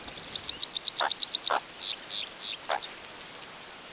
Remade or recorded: recorded